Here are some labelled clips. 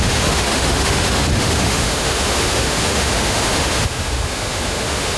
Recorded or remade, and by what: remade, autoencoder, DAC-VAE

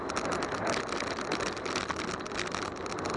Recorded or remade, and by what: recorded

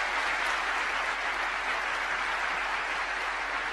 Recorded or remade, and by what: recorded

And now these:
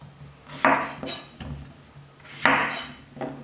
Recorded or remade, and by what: recorded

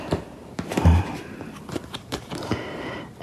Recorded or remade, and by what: remade, vocoder, BigVGAN v2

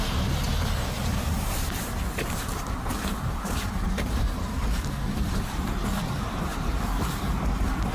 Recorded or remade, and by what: remade, vocoder, BigVGAN v2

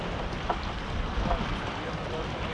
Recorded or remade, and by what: recorded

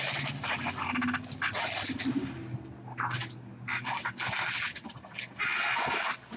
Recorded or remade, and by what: recorded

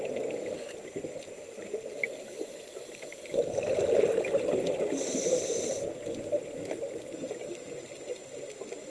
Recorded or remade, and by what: recorded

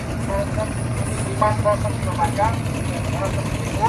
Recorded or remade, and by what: recorded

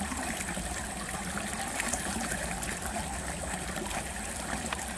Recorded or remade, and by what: remade, vocoder, BigVGAN v2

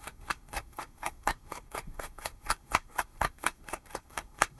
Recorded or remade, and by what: remade, codec, SNAC